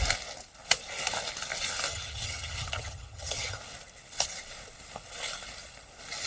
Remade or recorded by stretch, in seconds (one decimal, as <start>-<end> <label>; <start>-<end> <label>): 0.0-1.9 recorded; 1.9-3.6 remade; 3.6-6.3 recorded